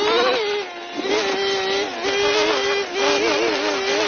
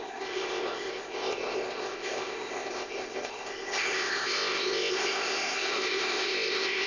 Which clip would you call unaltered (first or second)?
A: first